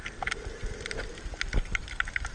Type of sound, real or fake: real